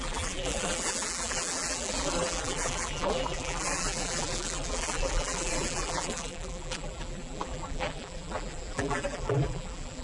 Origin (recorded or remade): remade